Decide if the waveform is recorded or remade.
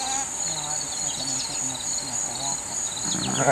recorded